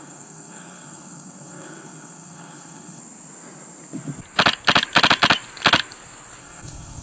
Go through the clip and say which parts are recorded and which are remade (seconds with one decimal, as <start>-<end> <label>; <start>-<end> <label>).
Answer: 0.0-3.0 remade; 3.0-6.4 recorded; 6.4-7.0 remade